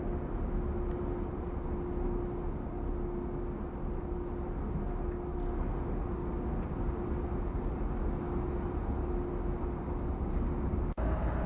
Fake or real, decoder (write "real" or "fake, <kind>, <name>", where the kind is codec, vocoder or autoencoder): real